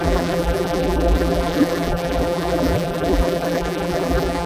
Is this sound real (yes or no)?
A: no